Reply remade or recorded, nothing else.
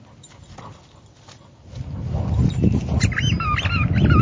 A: recorded